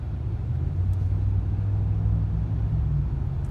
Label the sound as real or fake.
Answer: real